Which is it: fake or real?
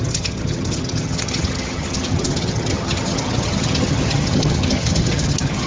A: fake